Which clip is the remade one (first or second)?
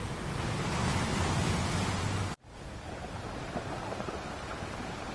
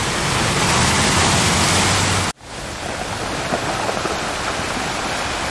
first